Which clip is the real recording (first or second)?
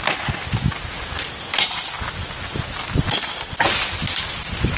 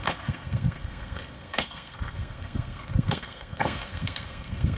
first